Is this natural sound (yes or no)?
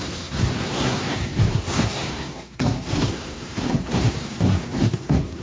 no